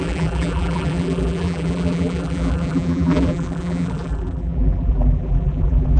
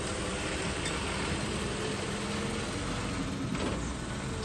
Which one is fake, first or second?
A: first